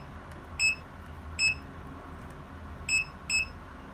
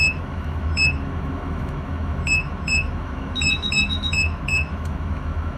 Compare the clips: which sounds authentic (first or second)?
first